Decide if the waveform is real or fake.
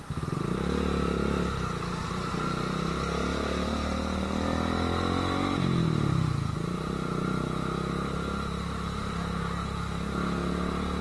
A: real